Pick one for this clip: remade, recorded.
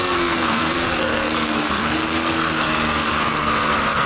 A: remade